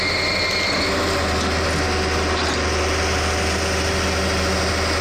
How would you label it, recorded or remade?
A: recorded